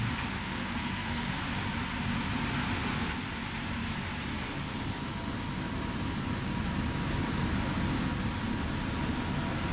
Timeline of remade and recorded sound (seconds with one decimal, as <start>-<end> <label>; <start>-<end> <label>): 0.0-0.4 recorded; 0.4-1.3 remade; 1.3-9.7 recorded